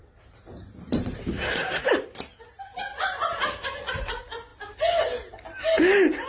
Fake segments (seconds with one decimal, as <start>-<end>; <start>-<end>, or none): 2.9-4.0